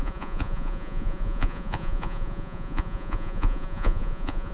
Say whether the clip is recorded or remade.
remade